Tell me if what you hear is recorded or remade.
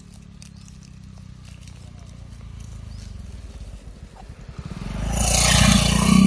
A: recorded